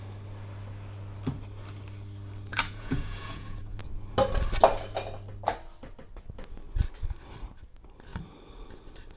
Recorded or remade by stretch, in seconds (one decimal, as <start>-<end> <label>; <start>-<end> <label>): 0.0-2.5 recorded; 2.5-3.8 remade; 3.8-9.2 recorded